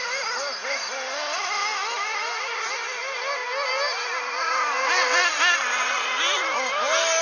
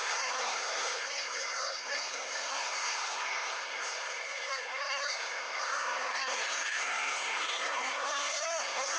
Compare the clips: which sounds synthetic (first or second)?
second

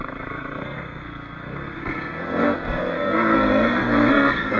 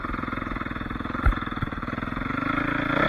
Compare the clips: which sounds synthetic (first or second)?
first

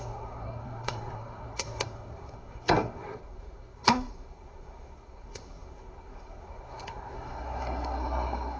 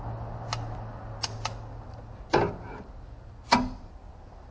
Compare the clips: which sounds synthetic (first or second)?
first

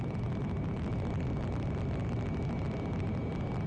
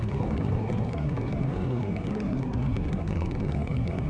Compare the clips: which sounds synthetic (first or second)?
second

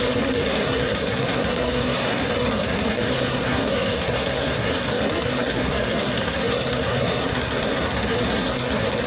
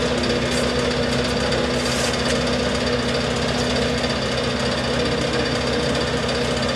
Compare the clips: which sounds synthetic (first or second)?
first